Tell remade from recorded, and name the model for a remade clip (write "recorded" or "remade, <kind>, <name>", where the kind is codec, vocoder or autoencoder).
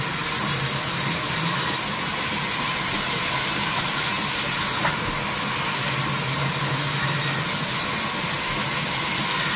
recorded